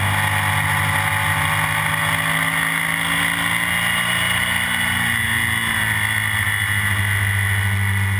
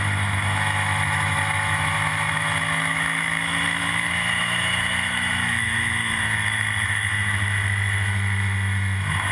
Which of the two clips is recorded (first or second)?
first